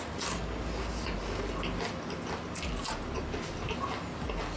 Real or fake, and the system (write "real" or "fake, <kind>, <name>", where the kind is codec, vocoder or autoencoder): real